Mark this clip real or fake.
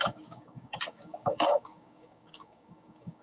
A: fake